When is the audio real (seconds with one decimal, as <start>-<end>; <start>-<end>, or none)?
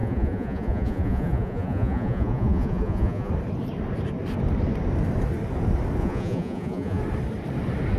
3.3-6.0; 7.0-8.0